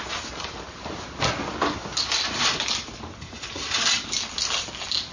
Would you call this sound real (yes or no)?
yes